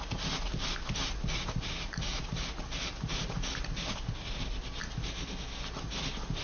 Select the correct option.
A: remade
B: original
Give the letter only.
B